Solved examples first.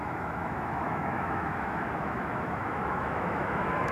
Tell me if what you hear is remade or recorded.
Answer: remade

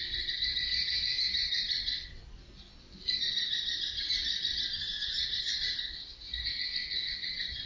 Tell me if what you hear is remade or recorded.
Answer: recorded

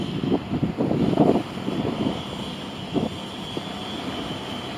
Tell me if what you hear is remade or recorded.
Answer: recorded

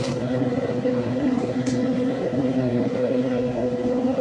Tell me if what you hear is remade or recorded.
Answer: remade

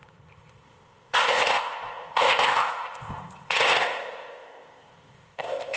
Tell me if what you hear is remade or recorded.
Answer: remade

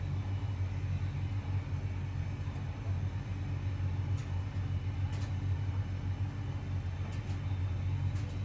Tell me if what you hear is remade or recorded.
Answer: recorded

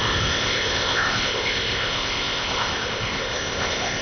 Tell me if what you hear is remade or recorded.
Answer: remade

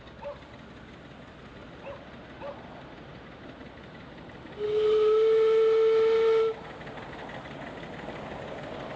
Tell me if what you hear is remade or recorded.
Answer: recorded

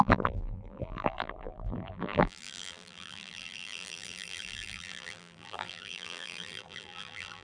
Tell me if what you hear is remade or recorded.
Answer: remade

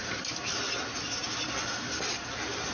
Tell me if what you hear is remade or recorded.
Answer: recorded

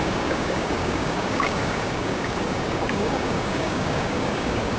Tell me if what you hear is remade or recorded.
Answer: remade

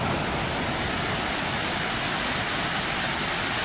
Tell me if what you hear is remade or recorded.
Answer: recorded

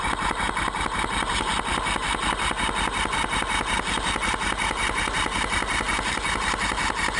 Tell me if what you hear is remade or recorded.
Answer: recorded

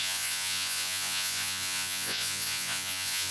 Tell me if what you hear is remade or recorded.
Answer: remade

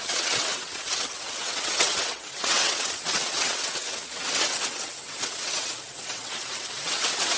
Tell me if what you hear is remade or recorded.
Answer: remade